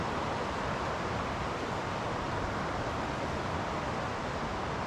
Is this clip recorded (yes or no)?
yes